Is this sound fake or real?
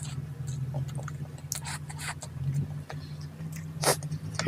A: real